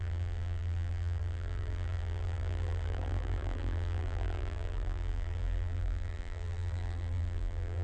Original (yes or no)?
no